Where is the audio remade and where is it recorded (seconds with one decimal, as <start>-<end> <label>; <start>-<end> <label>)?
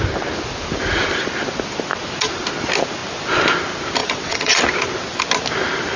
0.0-4.0 recorded; 4.0-4.6 remade; 4.6-6.0 recorded